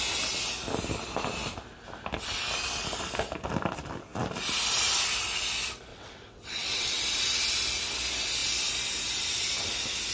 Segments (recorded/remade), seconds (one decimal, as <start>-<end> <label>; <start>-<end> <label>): 0.0-5.9 recorded; 5.9-7.0 remade; 7.0-10.1 recorded